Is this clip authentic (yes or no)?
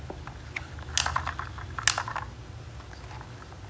yes